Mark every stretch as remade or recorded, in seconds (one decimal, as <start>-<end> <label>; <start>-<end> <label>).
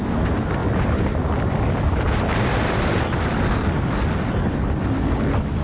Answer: 0.0-0.6 recorded; 0.6-4.0 remade; 4.0-5.6 recorded